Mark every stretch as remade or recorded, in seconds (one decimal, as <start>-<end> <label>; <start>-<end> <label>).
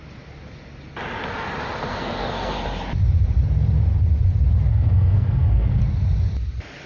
0.0-1.9 recorded; 1.9-2.5 remade; 2.5-4.7 recorded; 4.7-5.8 remade; 5.8-6.9 recorded